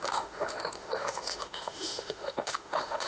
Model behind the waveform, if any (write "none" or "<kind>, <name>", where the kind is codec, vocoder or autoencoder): autoencoder, DAC-VAE